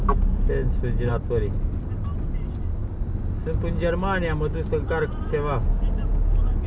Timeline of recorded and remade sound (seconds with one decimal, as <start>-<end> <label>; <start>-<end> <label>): 0.0-6.7 recorded

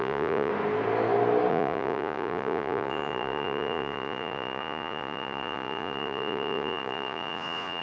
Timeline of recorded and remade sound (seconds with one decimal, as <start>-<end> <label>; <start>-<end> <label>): 0.0-0.5 remade; 0.5-1.5 recorded; 1.5-7.8 remade

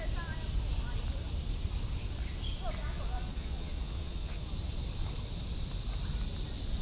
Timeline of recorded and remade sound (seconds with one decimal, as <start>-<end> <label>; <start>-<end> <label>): 0.0-2.8 recorded; 2.8-4.5 remade; 4.5-6.8 recorded

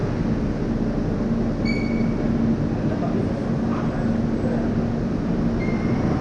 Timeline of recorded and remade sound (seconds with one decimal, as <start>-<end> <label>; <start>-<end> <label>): 0.0-6.2 recorded

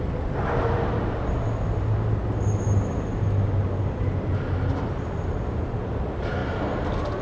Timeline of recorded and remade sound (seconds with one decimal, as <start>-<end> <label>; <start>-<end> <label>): 0.0-7.2 recorded

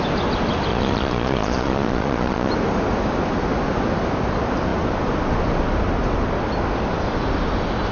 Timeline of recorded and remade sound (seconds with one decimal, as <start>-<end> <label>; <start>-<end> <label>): 0.0-0.7 recorded; 0.7-2.5 remade; 2.5-7.9 recorded

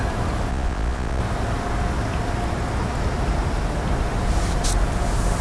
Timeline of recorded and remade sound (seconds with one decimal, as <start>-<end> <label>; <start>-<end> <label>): 0.0-0.5 recorded; 0.5-1.2 remade; 1.2-5.4 recorded

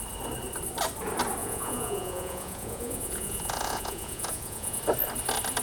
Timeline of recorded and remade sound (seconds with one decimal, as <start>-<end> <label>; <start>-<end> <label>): 0.0-1.4 recorded; 1.4-4.8 remade; 4.8-5.6 recorded